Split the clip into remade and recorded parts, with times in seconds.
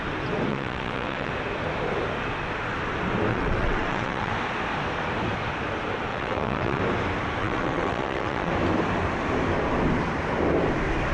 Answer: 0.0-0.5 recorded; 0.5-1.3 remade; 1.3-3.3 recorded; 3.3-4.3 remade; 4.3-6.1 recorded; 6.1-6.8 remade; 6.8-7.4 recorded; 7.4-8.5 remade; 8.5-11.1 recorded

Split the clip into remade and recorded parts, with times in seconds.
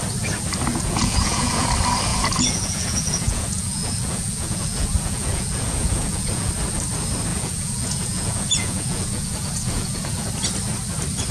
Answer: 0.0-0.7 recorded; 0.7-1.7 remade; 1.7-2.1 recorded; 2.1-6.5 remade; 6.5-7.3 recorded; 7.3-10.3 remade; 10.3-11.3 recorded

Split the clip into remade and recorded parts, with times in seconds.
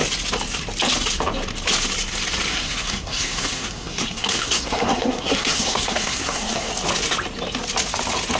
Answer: 0.0-2.5 recorded; 2.5-6.7 remade; 6.7-8.4 recorded